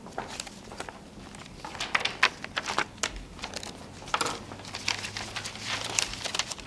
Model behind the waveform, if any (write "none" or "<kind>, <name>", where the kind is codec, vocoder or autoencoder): none